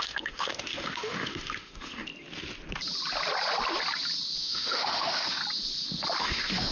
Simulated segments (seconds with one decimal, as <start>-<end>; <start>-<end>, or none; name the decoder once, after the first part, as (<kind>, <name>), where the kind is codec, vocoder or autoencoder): 0.0-2.1 (autoencoder, DAC-VAE); 4.4-5.4; 6.2-6.7